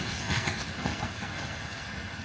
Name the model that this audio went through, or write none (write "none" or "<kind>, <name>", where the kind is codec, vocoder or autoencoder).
codec, SNAC